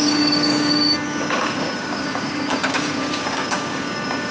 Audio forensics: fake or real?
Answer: fake